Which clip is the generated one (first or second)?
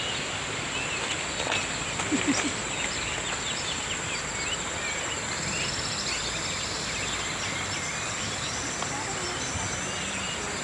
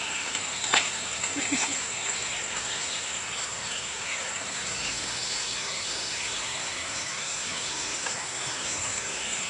second